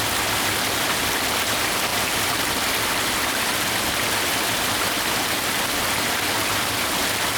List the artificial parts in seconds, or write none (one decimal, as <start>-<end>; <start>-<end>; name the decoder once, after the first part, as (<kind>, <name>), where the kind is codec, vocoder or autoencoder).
none